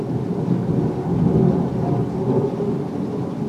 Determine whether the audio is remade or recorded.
recorded